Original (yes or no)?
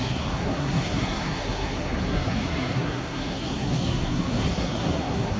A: no